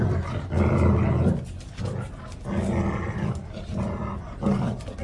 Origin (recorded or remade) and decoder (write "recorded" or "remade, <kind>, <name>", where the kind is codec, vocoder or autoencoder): recorded